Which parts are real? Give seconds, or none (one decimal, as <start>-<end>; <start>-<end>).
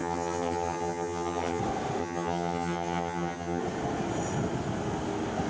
1.6-2.0; 3.6-5.5